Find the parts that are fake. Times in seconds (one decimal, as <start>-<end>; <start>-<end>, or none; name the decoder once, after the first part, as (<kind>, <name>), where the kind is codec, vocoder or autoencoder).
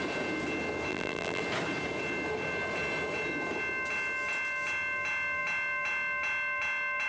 0.9-1.4 (vocoder, BigVGAN v2)